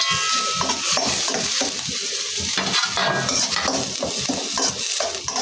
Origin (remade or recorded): recorded